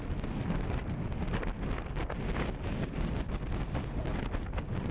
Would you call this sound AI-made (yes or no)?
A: no